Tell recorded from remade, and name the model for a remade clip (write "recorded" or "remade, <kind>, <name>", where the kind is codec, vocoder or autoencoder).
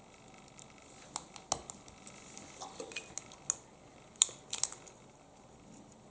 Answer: recorded